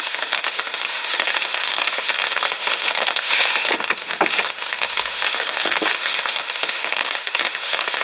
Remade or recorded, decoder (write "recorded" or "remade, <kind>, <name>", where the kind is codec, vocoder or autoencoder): remade, autoencoder, DAC-VAE